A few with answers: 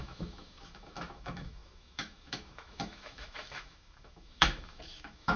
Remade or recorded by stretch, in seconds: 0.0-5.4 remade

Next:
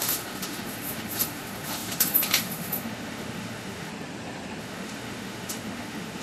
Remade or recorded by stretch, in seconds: 0.0-3.9 remade; 3.9-4.6 recorded; 4.6-6.2 remade

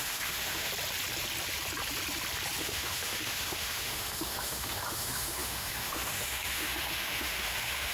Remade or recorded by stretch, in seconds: 0.0-0.7 remade; 0.7-2.6 recorded; 2.6-7.9 remade